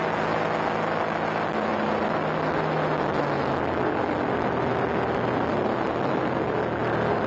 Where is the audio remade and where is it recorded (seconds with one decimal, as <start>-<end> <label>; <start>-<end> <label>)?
0.0-7.3 recorded